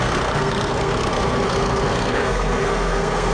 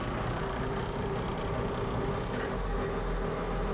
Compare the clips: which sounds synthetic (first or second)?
first